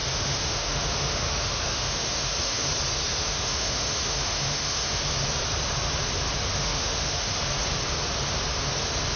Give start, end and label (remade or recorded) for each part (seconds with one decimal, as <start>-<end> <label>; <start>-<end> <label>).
0.0-2.7 remade; 2.7-3.1 recorded; 3.1-5.1 remade; 5.1-6.5 recorded; 6.5-7.4 remade; 7.4-9.2 recorded